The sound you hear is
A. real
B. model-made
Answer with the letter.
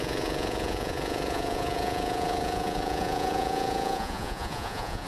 B